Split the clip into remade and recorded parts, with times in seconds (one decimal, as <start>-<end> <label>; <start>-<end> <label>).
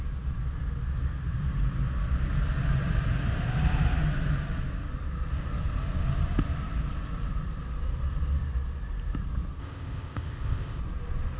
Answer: 0.0-9.6 recorded; 9.6-10.8 remade; 10.8-11.4 recorded